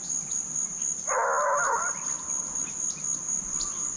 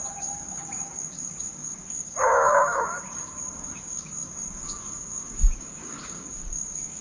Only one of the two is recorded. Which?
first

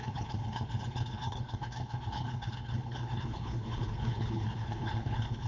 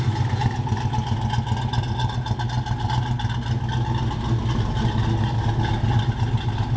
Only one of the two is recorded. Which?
second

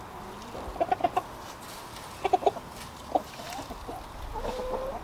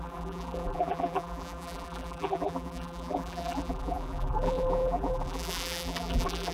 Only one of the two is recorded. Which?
first